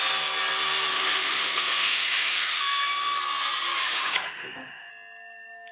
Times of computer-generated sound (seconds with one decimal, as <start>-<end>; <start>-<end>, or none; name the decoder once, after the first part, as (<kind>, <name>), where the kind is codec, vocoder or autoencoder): 0.9-3.2 (autoencoder, DAC-VAE); 3.8-4.9